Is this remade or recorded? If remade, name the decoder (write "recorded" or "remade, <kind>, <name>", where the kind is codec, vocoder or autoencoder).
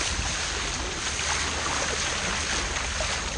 recorded